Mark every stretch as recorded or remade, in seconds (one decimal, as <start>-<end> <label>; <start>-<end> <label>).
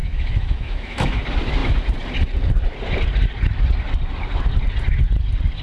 0.0-1.2 remade; 1.2-5.6 recorded